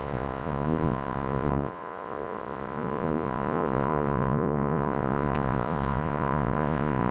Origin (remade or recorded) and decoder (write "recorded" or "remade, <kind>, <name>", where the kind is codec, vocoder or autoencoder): remade, vocoder, Vocos